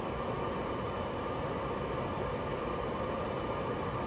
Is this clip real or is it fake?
fake